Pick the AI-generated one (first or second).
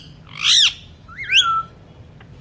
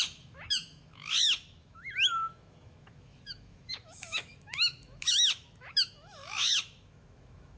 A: second